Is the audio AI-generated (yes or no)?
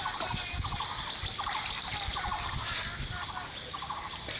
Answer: no